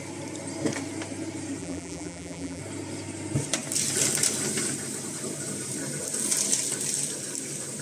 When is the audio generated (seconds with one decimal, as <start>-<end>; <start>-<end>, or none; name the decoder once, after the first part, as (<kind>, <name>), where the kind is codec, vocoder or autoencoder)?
1.6-2.6 (vocoder, BigVGAN v2)